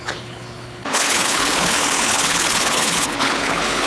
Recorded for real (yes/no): no